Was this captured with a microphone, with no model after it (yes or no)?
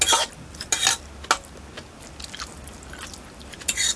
yes